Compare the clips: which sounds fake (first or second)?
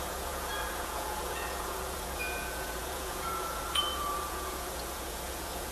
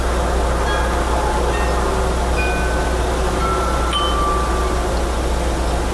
first